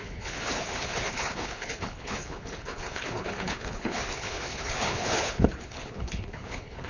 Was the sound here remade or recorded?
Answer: remade